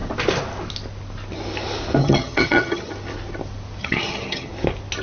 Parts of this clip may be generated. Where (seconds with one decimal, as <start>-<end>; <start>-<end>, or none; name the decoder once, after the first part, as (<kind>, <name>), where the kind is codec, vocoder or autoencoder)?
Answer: 2.0-2.9 (vocoder, HiFi-GAN); 3.8-4.5